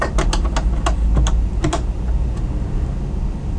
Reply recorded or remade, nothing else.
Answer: recorded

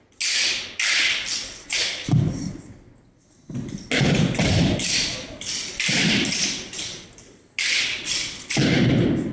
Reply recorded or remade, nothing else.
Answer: recorded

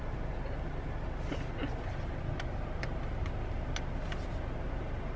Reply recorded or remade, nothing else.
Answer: recorded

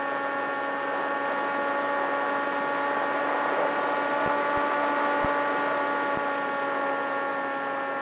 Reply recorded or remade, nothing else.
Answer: recorded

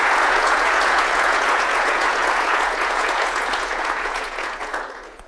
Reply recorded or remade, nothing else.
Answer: remade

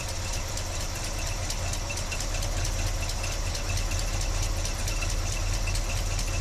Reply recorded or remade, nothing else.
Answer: recorded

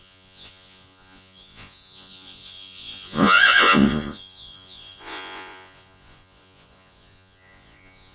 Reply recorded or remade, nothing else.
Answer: remade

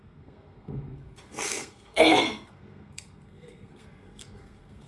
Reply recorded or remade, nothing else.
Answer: remade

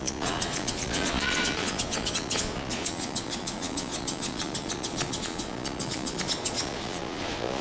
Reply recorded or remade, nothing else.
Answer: remade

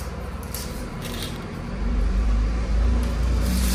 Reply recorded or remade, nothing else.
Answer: remade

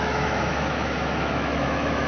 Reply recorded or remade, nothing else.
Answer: remade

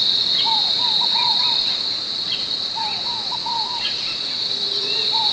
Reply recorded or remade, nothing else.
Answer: remade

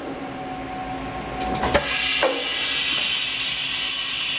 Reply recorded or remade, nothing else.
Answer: recorded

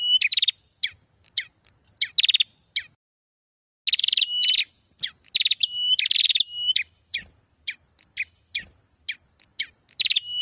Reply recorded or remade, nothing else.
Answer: recorded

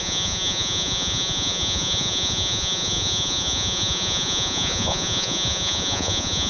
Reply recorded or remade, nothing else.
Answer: remade